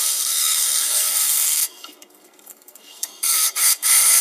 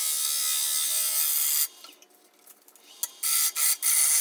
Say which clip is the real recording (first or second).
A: second